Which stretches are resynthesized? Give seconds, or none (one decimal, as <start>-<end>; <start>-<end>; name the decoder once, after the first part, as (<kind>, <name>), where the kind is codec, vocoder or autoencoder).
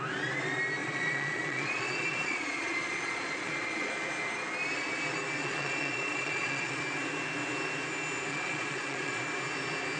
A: 0.8-3.9 (vocoder, Vocos); 5.4-6.8; 8.3-9.2